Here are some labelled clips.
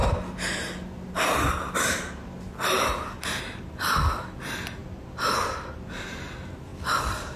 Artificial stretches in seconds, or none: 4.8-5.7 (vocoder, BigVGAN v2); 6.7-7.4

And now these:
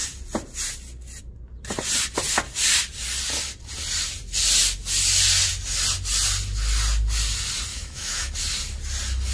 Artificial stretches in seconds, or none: 7.7-8.3 (autoencoder, DAC-VAE)

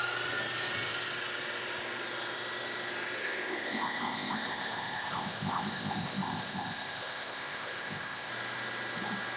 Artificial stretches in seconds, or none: 3.2-8.3 (codec, ZipCodec)

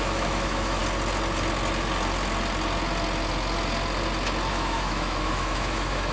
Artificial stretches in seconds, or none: 0.0-0.8 (autoencoder, DAC-VAE); 4.5-6.1

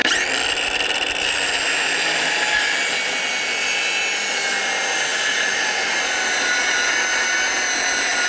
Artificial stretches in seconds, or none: 0.0-1.3 (vocoder, BigVGAN v2); 5.1-6.6